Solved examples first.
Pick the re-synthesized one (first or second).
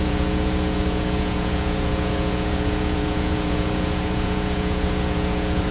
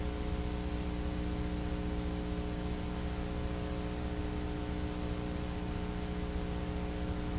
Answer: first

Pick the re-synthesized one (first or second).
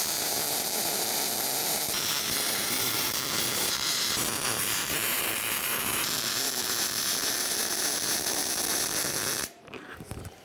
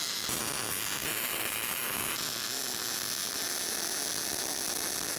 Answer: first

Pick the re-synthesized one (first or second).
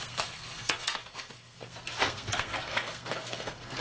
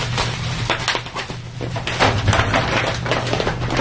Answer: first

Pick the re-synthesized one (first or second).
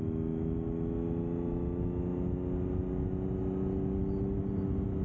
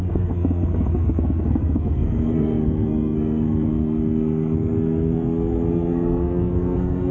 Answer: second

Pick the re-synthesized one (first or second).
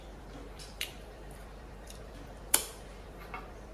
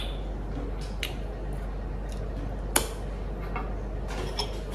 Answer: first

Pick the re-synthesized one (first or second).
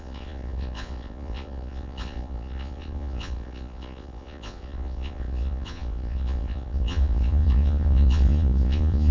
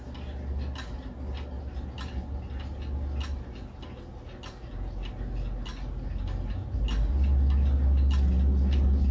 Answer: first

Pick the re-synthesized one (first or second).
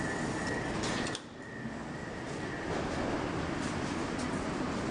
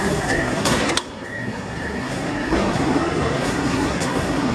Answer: second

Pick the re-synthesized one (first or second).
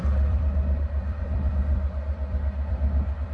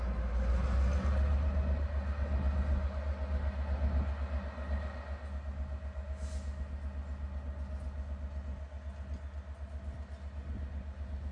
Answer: first